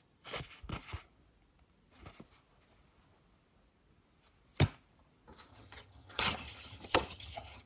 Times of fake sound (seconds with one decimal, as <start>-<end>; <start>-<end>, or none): 5.5-7.7